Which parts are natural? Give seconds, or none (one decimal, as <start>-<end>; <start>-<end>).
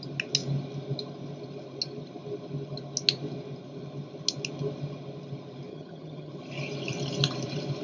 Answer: 0.0-5.7; 6.3-7.8